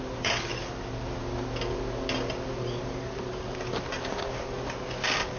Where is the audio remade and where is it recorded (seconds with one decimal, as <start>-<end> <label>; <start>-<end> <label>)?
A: 0.0-5.4 recorded